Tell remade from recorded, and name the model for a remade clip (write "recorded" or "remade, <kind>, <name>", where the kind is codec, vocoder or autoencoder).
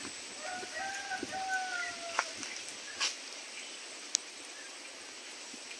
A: recorded